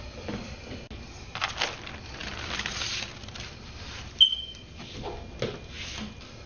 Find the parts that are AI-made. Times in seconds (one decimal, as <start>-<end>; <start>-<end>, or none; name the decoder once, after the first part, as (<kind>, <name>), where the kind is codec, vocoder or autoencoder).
none